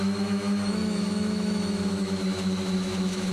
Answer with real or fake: fake